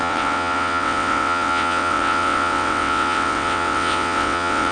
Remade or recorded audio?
remade